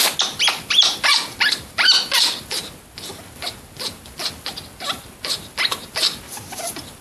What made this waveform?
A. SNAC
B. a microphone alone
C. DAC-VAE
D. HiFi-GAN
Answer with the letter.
B